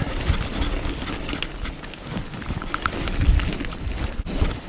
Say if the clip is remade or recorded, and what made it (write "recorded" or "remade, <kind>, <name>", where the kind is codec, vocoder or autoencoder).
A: recorded